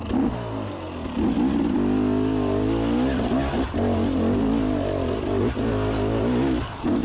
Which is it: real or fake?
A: real